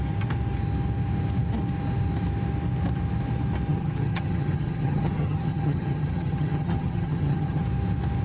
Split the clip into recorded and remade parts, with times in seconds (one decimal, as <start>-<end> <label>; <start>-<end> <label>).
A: 0.0-3.7 recorded; 3.7-7.6 remade; 7.6-8.2 recorded

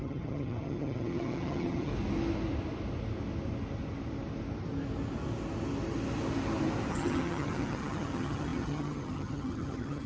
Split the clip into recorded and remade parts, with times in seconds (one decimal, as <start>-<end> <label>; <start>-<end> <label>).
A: 0.0-1.9 remade; 1.9-6.9 recorded; 6.9-10.1 remade

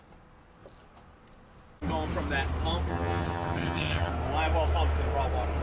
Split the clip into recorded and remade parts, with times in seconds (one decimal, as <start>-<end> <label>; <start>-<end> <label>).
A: 0.0-2.9 recorded; 2.9-4.1 remade; 4.1-5.6 recorded

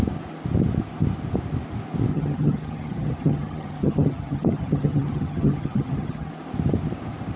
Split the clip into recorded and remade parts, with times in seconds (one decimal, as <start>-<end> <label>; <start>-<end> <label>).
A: 0.0-2.1 recorded; 2.1-6.3 remade; 6.3-7.4 recorded